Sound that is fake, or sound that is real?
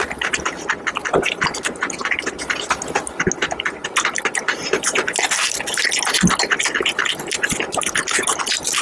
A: real